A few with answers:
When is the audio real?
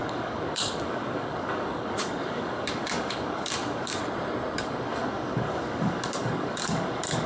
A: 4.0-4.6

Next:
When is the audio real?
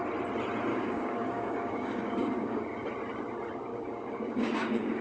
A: 0.0-0.7; 2.6-3.7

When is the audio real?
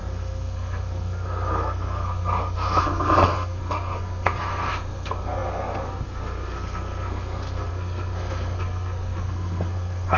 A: none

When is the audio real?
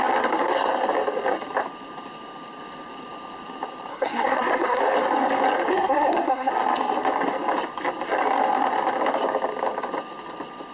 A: 0.0-3.9; 4.8-5.7; 6.5-10.7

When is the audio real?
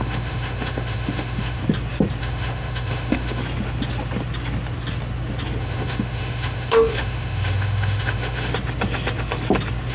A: 1.6-2.2; 3.4-5.6; 8.5-9.9